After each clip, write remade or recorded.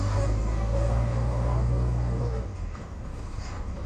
remade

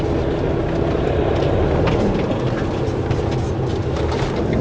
recorded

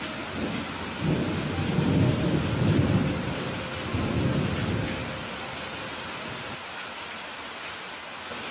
recorded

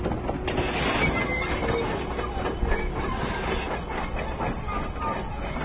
recorded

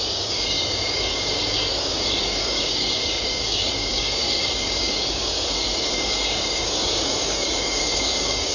remade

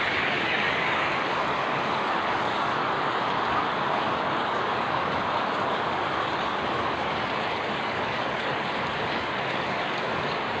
remade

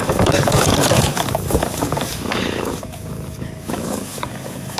remade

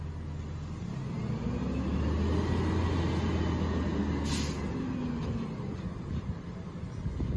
recorded